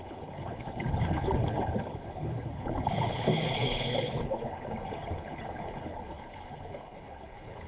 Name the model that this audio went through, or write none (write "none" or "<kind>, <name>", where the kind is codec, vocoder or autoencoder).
codec, HILCodec